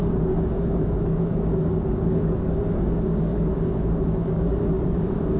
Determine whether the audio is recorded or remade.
remade